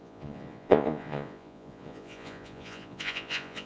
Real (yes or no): no